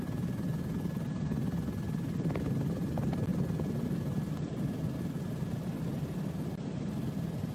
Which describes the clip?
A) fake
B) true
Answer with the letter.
B